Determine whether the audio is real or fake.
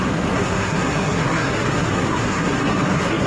fake